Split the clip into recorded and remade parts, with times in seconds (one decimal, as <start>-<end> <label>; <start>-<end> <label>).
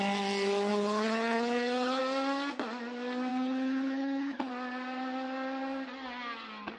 0.0-0.7 recorded; 0.7-2.0 remade; 2.0-3.3 recorded; 3.3-4.5 remade; 4.5-6.8 recorded